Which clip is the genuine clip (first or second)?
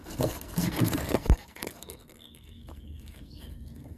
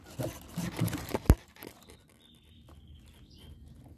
second